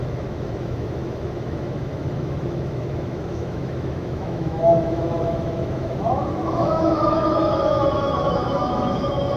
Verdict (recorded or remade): remade